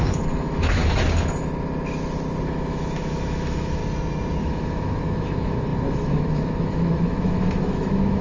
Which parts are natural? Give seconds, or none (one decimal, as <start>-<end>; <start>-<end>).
0.8-2.4; 3.8-4.4